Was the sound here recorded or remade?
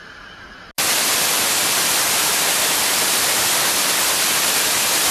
recorded